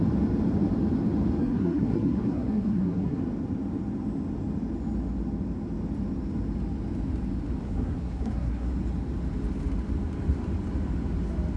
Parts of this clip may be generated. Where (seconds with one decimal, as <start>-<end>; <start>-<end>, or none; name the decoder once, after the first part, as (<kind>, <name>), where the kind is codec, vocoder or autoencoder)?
1.4-3.2 (codec, SNAC); 7.6-8.7